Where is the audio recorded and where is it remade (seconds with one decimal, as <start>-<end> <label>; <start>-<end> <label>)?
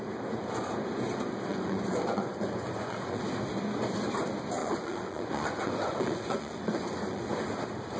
0.0-1.5 recorded; 1.5-3.2 remade; 3.2-4.6 recorded; 4.6-7.2 remade; 7.2-8.0 recorded